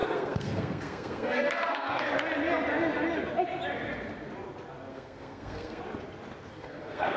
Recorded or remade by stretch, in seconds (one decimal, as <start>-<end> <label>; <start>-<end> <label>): 0.0-2.1 remade; 2.1-4.9 recorded; 4.9-5.8 remade; 5.8-6.5 recorded; 6.5-7.2 remade